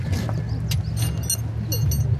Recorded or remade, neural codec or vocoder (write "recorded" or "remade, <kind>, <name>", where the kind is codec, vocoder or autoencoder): recorded